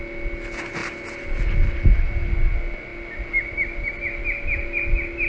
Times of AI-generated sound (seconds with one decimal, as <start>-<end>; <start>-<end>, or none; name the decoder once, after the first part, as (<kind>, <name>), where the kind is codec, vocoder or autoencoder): none